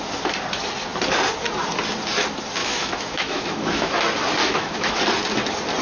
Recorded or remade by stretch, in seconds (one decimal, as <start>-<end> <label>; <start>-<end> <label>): 0.0-2.6 recorded; 2.6-3.9 remade; 3.9-4.4 recorded; 4.4-5.0 remade; 5.0-5.8 recorded